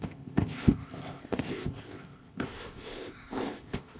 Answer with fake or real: fake